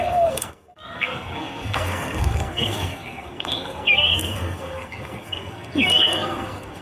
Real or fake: fake